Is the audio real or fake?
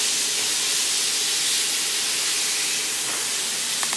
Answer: real